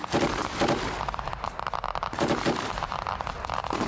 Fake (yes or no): no